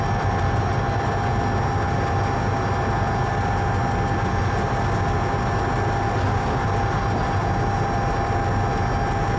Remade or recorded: recorded